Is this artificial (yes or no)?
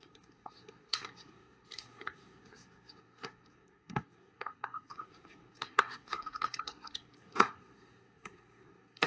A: yes